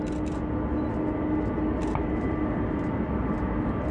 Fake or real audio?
real